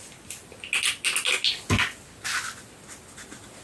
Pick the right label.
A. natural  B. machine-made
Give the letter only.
A